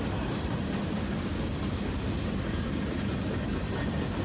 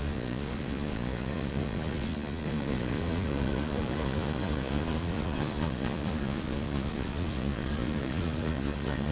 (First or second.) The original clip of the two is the first